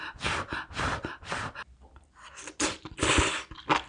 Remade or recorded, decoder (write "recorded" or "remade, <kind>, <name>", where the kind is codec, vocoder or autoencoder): recorded